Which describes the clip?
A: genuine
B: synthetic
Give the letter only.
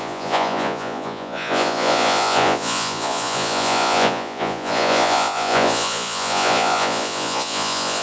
B